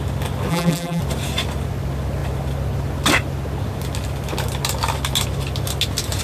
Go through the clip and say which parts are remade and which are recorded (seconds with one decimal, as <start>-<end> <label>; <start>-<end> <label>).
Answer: 0.0-0.5 recorded; 0.5-1.0 remade; 1.0-6.2 recorded